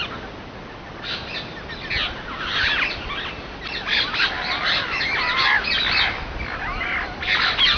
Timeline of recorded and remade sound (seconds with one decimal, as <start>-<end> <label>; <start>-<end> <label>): 0.0-7.8 recorded